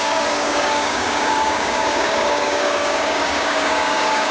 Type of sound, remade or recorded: remade